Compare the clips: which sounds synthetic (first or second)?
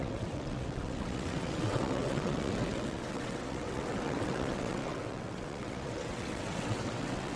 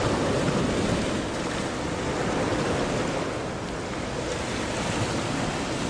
first